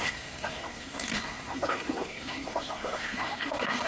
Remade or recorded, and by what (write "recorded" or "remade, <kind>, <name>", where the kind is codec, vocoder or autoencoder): remade, codec, SNAC